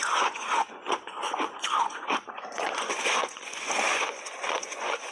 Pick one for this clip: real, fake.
fake